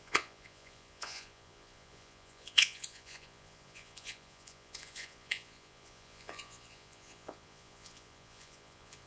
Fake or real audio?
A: fake